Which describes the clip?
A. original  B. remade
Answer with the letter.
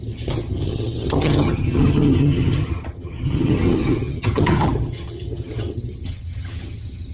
B